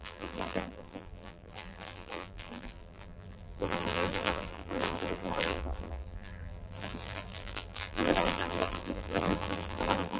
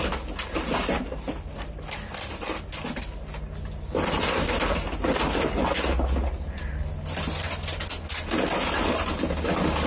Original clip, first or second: second